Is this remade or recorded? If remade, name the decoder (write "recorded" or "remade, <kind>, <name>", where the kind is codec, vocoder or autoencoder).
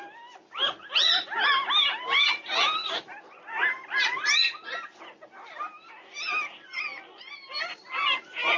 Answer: recorded